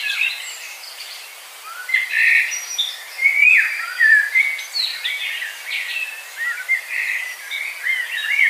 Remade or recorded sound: recorded